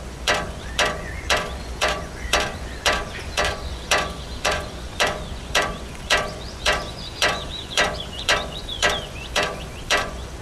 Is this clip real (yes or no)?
no